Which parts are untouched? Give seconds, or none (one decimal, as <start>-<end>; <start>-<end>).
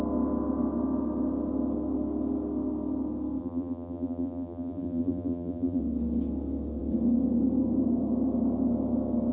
0.0-3.4; 5.8-9.3